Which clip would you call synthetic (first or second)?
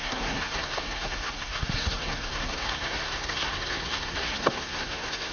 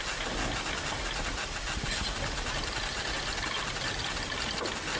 first